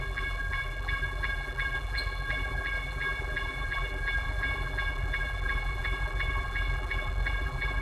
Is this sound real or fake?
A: fake